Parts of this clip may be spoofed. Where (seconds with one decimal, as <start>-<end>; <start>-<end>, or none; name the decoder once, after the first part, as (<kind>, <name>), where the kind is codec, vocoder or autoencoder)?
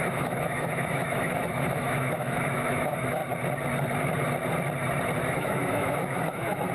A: 0.0-3.2 (autoencoder, DAC-VAE); 5.3-6.7